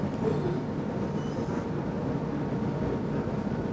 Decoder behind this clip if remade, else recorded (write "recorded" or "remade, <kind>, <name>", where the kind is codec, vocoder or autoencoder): recorded